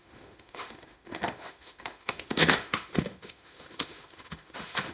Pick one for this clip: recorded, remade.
remade